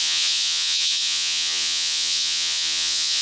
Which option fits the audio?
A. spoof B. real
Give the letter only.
A